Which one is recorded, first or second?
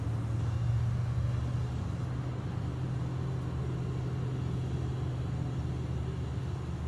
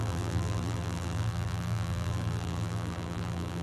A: first